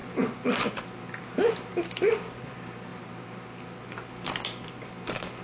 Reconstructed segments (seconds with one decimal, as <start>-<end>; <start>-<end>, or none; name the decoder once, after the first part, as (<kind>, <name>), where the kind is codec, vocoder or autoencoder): 1.7-2.4 (vocoder, BigVGAN v2); 2.9-4.9